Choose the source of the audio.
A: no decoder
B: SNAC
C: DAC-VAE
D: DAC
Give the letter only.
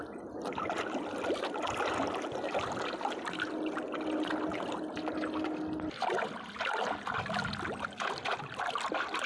A